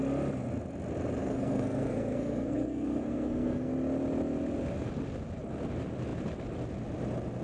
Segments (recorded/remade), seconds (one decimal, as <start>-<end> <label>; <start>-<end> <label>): 0.0-1.2 recorded; 1.2-3.7 remade; 3.7-7.4 recorded